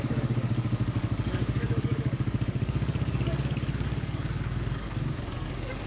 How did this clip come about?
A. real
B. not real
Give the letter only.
B